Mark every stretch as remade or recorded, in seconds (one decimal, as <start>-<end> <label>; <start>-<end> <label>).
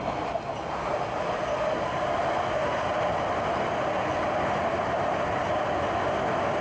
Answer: 0.0-6.6 recorded